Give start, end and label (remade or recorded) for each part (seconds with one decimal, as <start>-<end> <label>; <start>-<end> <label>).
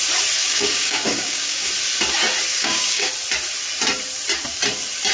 0.0-0.4 recorded; 0.4-1.7 remade; 1.7-2.5 recorded; 2.5-3.1 remade; 3.1-5.1 recorded